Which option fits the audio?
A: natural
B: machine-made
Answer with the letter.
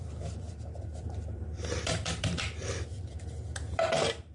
B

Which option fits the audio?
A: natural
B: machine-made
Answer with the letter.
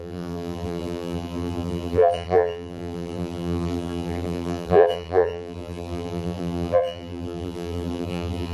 B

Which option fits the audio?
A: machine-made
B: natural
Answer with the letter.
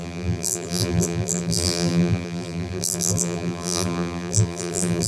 A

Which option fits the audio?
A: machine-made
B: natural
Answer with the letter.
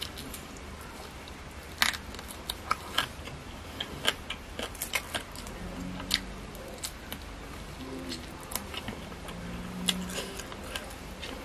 B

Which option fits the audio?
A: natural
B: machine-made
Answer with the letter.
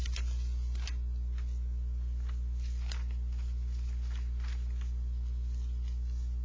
A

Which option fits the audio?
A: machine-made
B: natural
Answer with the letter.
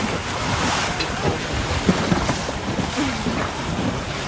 A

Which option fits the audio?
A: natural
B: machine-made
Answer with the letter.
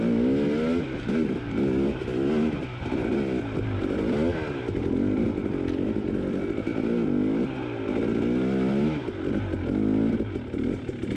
A